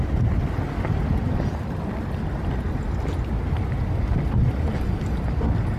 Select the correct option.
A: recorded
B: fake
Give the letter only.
A